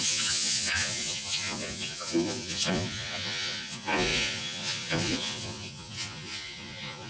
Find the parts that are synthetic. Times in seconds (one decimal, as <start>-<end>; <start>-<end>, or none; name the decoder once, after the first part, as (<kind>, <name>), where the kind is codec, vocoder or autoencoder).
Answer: 0.0-7.1 (vocoder, Vocos)

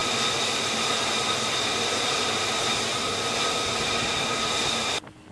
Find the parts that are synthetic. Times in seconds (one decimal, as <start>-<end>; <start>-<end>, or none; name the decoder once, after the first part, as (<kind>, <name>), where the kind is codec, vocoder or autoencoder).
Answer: none